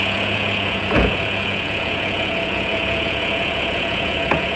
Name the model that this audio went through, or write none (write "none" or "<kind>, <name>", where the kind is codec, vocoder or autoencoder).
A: vocoder, Vocos